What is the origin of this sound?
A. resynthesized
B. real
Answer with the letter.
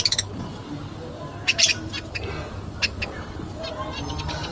B